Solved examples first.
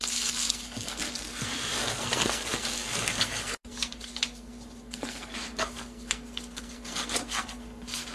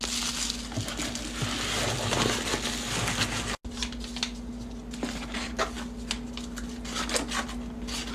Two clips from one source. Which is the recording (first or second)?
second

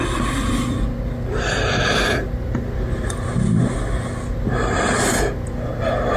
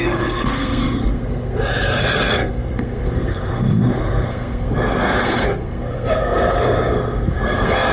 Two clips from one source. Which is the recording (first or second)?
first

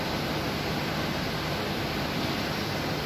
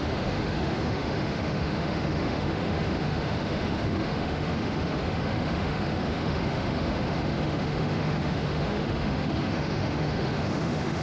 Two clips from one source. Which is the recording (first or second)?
first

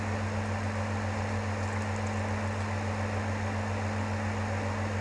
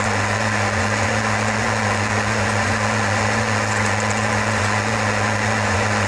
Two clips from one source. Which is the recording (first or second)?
first